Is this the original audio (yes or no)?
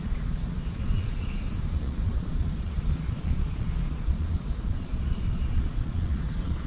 no